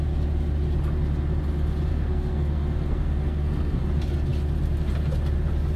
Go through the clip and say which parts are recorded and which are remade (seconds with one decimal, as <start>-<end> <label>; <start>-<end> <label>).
0.0-1.9 recorded; 1.9-3.8 remade; 3.8-5.8 recorded